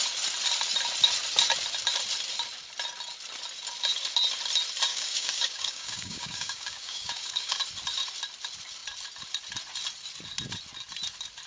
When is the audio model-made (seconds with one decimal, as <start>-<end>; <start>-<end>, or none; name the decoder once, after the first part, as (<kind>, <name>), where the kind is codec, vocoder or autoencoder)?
4.9-7.6 (codec, DAC)